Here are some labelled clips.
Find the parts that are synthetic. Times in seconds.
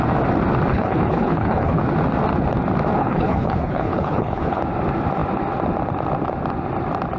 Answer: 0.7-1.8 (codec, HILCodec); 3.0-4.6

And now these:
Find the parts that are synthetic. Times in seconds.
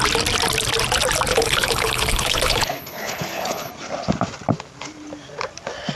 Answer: 1.3-3.7 (codec, HILCodec)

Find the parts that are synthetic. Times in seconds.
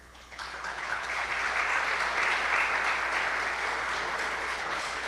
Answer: 0.0-1.3 (codec, HILCodec); 4.4-5.1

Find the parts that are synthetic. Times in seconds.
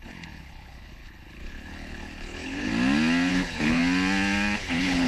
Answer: 0.0-2.7 (codec, HILCodec); 3.3-3.8; 4.6-5.1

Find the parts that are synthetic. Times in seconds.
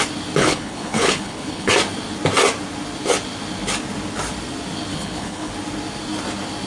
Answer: 0.4-1.7 (codec, HILCodec); 4.9-5.5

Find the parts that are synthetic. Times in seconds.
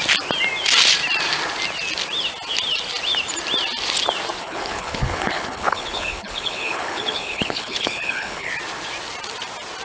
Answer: 4.4-8.5 (codec, HILCodec)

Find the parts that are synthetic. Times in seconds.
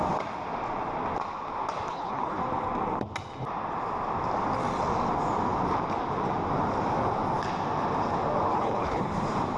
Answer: 1.9-2.4 (codec, HILCodec); 8.5-9.1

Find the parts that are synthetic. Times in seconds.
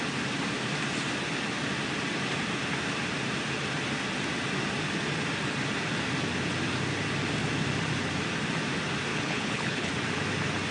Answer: 9.1-9.9 (codec, HILCodec)